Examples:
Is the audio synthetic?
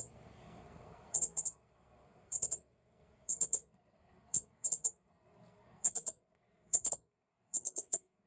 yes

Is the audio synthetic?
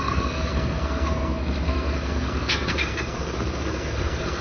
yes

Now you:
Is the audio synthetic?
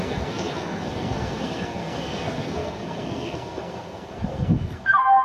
yes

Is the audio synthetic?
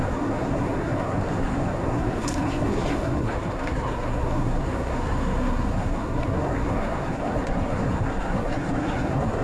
yes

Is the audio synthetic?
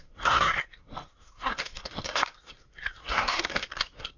yes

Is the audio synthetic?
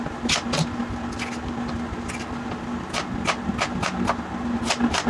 no